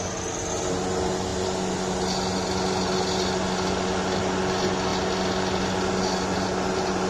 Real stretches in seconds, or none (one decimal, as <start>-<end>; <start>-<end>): 0.0-7.1